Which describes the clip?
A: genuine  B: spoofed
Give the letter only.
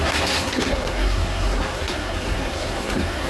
B